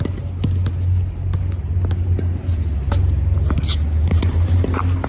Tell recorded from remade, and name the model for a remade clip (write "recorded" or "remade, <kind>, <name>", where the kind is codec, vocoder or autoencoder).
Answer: recorded